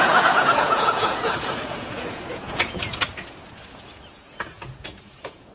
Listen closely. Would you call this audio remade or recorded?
remade